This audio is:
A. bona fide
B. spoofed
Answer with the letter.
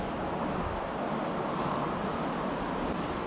A